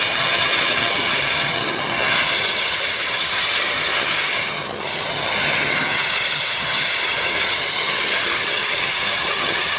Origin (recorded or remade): remade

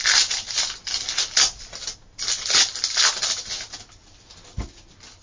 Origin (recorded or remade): recorded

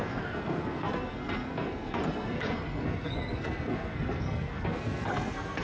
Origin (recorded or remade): remade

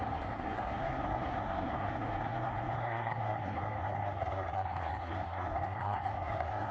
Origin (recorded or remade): remade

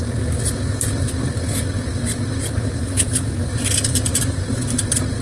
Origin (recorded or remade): recorded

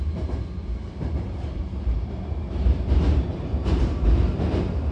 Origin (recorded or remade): remade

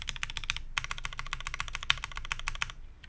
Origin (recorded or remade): recorded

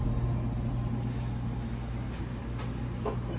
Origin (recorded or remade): recorded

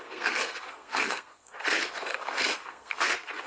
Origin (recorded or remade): remade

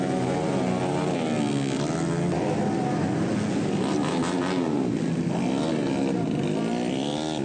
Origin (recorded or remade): recorded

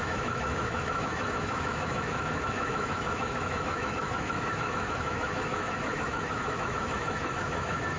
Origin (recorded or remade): remade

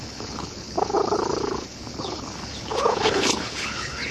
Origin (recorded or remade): remade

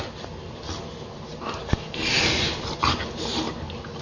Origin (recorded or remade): recorded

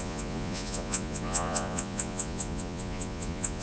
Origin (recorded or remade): remade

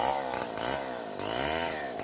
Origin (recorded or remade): recorded